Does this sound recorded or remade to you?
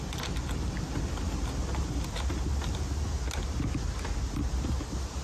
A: recorded